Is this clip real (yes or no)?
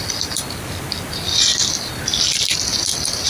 no